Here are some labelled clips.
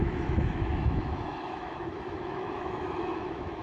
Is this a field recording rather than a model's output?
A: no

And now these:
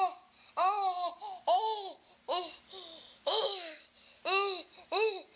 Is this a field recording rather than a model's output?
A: yes